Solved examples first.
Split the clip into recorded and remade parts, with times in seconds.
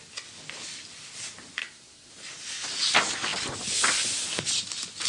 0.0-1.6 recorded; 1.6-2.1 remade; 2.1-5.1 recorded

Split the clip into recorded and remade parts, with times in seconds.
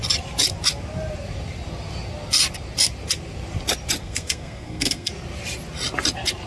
0.0-4.0 recorded; 4.0-5.1 remade; 5.1-6.5 recorded